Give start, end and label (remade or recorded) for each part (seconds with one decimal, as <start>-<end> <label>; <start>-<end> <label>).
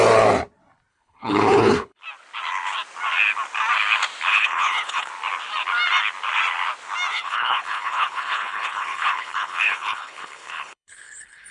0.0-0.9 recorded; 0.9-2.0 remade; 2.0-4.3 recorded; 4.3-5.1 remade; 5.1-7.1 recorded; 7.1-11.5 remade